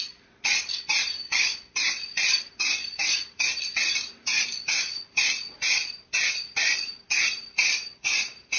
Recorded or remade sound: recorded